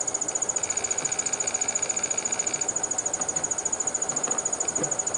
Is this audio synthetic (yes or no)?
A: no